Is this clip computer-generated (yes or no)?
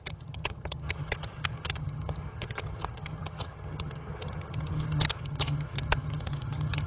yes